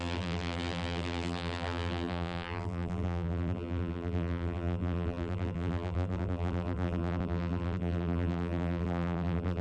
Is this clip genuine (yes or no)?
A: no